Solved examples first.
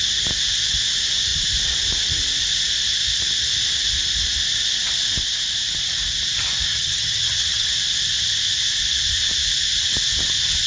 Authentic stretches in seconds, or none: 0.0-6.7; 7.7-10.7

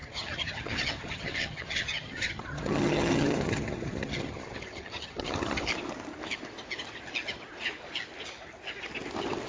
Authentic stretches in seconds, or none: 5.7-9.5

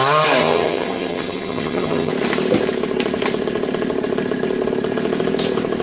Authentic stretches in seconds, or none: 0.0-0.4; 2.1-5.8

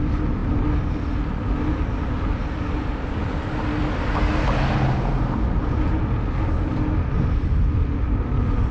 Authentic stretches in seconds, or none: 0.0-8.7

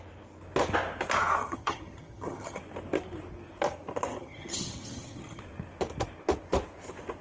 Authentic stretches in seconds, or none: 0.0-1.4; 2.6-4.1; 5.4-7.2

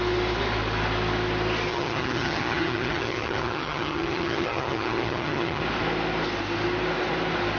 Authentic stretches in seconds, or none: 0.0-1.7; 5.6-7.6

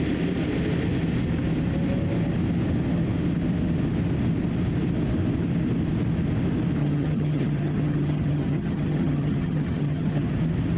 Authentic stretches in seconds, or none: 0.0-6.8; 10.3-10.8